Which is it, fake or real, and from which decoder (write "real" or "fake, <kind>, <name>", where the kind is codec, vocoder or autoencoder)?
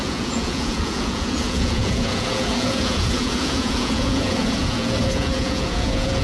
fake, vocoder, Vocos